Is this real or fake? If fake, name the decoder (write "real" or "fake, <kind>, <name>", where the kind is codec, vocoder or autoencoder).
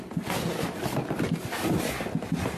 real